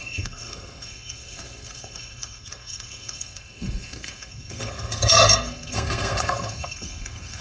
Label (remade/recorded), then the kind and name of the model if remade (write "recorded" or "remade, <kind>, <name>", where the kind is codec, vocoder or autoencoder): remade, codec, SNAC